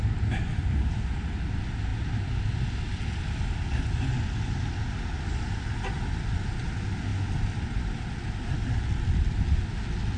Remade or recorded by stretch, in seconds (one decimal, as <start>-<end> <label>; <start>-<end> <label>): 0.0-10.2 recorded